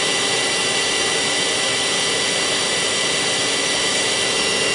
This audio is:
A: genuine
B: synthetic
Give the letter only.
A